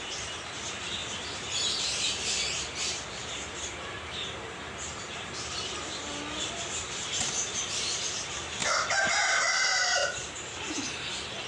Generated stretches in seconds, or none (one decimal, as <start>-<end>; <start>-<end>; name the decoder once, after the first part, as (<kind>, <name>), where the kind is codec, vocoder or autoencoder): 0.0-6.1 (vocoder, BigVGAN v2); 6.8-10.0